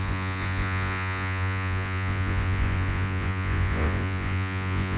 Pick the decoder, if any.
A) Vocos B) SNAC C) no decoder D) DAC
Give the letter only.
A